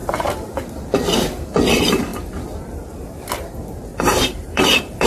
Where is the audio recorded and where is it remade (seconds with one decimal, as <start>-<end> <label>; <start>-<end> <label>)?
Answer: 0.0-0.5 remade; 0.5-3.9 recorded; 3.9-5.1 remade